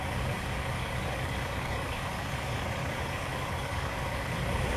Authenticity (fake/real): fake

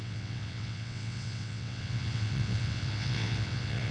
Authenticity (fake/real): fake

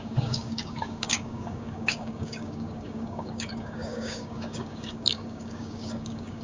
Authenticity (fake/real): fake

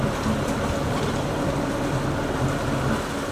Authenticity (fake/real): real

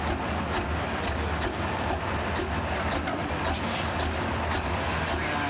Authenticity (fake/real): real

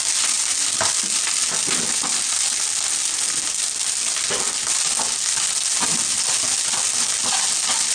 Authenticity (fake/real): real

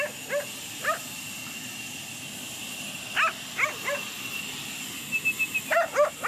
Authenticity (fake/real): real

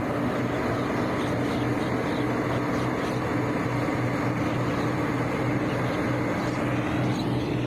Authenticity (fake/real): real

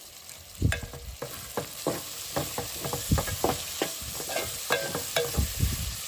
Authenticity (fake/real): real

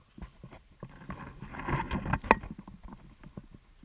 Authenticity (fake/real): real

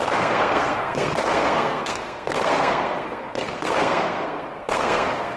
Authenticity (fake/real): fake